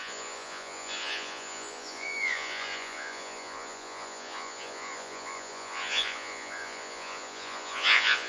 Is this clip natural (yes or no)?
no